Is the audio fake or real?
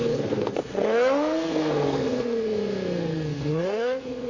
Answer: fake